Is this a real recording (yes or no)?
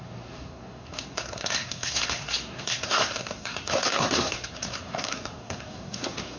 no